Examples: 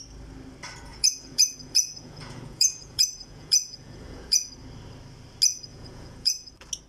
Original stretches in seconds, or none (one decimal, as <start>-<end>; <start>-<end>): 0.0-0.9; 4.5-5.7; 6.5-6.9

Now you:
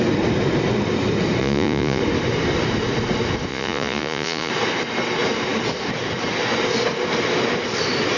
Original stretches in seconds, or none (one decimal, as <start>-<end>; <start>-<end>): 0.0-1.4; 2.0-3.5; 4.5-8.2

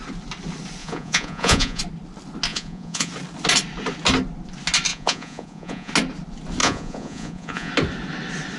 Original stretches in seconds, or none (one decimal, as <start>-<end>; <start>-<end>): 0.0-0.8; 1.8-2.5; 3.1-4.9; 5.9-6.6; 7.7-8.6

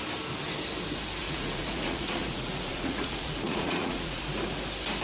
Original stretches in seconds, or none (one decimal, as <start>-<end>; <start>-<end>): 0.0-1.2; 4.2-5.0

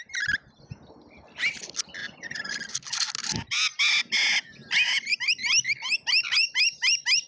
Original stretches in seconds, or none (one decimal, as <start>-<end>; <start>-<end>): 0.0-2.0; 2.5-7.3

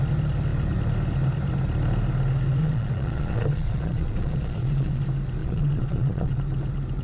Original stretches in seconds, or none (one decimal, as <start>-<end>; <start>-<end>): 0.0-2.6; 5.0-5.4; 6.4-7.0

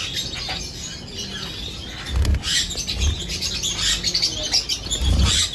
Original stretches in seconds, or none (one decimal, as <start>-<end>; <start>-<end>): 0.0-5.5